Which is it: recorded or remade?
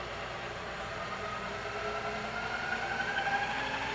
recorded